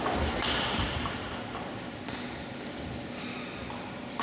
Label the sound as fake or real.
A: real